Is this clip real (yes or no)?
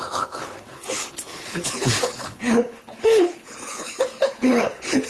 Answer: no